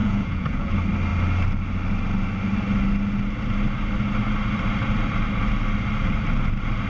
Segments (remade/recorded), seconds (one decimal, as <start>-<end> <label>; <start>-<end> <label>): 0.0-0.7 remade; 0.7-6.9 recorded